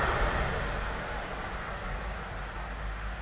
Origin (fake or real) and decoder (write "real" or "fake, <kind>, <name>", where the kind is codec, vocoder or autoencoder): real